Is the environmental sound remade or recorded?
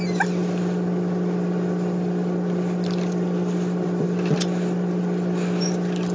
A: recorded